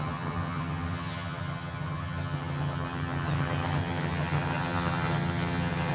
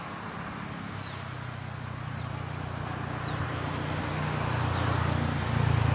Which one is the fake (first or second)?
first